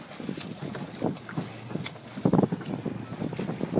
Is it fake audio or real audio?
real